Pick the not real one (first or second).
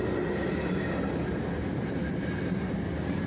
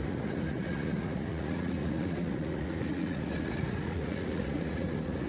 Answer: second